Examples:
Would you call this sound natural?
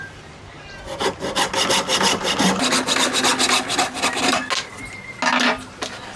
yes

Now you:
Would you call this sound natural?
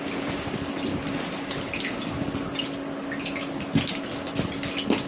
yes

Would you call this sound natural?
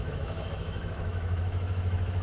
no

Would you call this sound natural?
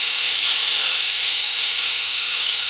no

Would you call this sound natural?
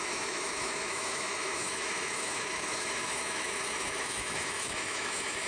no